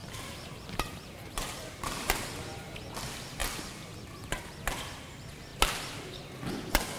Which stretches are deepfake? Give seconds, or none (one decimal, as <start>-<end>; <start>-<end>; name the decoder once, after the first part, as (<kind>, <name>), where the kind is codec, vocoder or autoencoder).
0.0-2.3 (vocoder, BigVGAN v2)